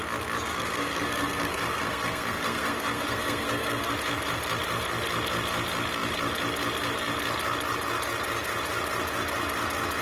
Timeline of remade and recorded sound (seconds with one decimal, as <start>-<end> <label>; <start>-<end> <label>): 0.0-0.5 recorded; 0.5-3.9 remade; 3.9-10.0 recorded